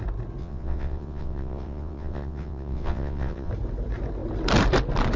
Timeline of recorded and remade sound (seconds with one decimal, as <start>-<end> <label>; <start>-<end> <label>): 0.0-0.4 recorded; 0.4-3.5 remade; 3.5-5.2 recorded

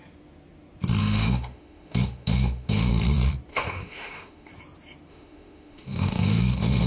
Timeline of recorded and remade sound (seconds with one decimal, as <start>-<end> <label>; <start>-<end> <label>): 0.0-1.0 recorded; 1.0-2.9 remade; 2.9-3.5 recorded; 3.5-4.5 remade; 4.5-5.1 recorded; 5.1-6.9 remade

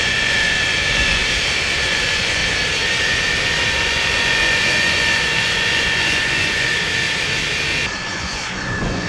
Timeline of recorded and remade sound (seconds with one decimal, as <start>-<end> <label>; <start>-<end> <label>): 0.0-1.2 remade; 1.2-1.8 recorded; 1.8-2.4 remade; 2.4-3.7 recorded; 3.7-6.7 remade; 6.7-8.0 recorded; 8.0-9.1 remade

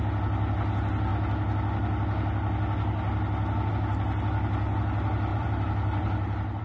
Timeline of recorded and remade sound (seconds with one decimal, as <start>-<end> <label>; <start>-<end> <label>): 0.0-5.3 recorded; 5.3-6.6 remade